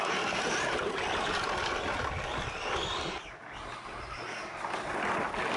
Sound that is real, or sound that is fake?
real